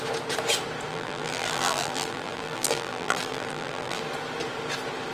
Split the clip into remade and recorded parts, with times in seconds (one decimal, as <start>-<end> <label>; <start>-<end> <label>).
0.0-0.9 recorded; 0.9-4.0 remade; 4.0-5.1 recorded